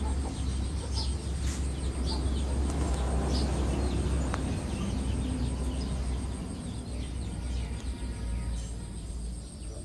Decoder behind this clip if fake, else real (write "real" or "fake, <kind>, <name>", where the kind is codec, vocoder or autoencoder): real